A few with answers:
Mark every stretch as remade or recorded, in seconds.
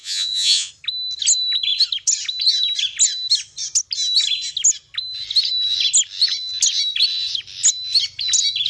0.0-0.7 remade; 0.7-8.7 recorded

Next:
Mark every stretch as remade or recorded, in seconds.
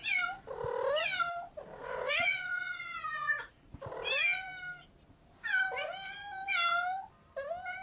0.0-1.8 recorded; 1.8-3.6 remade; 3.6-7.8 recorded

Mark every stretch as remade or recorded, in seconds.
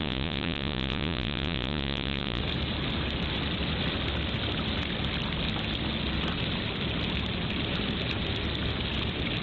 0.0-2.4 remade; 2.4-9.4 recorded